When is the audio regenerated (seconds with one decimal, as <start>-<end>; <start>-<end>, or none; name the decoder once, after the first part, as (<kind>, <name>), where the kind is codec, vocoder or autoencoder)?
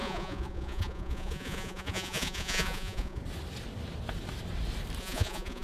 0.0-3.2 (vocoder, Vocos); 5.0-5.6